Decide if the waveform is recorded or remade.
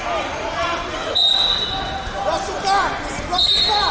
remade